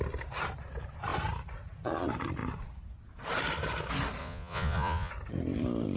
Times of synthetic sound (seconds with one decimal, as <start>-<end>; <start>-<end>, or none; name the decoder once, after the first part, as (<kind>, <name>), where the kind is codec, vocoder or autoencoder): 4.2-5.1 (vocoder, Vocos)